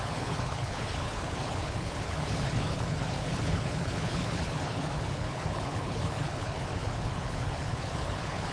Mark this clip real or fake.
fake